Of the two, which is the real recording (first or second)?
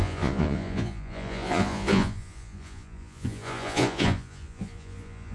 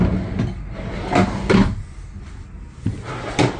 second